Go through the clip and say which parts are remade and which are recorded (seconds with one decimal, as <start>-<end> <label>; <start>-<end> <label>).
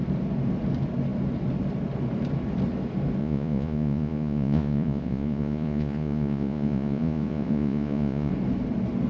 0.0-3.2 recorded; 3.2-8.3 remade; 8.3-9.1 recorded